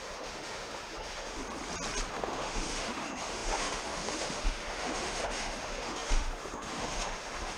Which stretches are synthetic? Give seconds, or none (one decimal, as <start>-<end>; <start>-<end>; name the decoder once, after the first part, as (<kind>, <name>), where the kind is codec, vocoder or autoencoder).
0.0-1.4 (autoencoder, DAC-VAE); 2.1-7.6